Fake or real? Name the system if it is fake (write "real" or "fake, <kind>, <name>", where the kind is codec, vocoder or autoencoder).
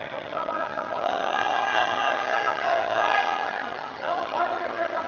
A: fake, vocoder, HiFi-GAN